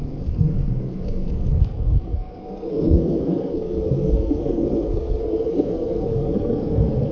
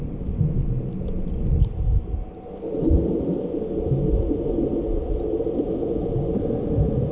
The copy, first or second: first